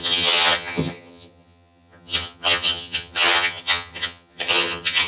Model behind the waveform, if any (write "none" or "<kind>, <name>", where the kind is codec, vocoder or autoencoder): vocoder, HiFi-GAN